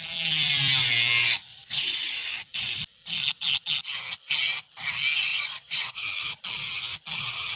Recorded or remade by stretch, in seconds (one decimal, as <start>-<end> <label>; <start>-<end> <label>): 0.0-1.5 recorded; 1.5-2.3 remade; 2.3-5.3 recorded; 5.3-5.9 remade; 5.9-7.6 recorded

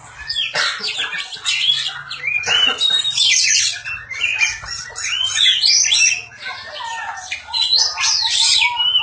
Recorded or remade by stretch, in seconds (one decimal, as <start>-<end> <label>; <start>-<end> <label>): 0.0-9.0 recorded

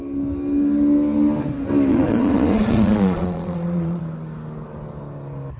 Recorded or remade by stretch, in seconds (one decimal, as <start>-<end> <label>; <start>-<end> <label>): 0.0-1.9 recorded; 1.9-4.0 remade; 4.0-5.6 recorded

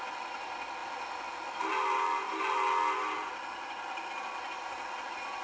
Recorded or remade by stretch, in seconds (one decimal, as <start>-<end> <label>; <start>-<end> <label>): 0.0-5.4 recorded

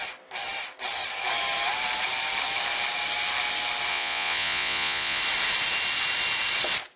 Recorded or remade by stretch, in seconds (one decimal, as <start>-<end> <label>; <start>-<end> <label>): 0.0-3.9 recorded; 3.9-5.2 remade; 5.2-7.0 recorded